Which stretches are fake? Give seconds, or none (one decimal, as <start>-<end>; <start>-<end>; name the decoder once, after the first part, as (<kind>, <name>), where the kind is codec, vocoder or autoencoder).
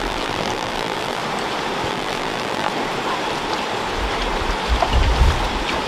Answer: 0.0-1.2 (vocoder, BigVGAN v2); 1.9-2.7